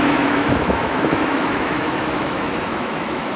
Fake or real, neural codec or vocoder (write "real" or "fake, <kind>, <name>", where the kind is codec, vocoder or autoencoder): fake, autoencoder, DAC-VAE